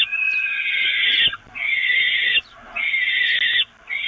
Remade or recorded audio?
recorded